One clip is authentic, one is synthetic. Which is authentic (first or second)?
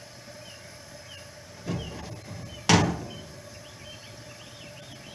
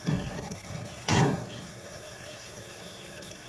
first